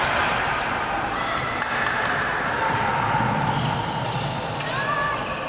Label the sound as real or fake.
real